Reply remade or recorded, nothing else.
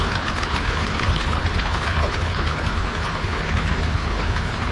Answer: remade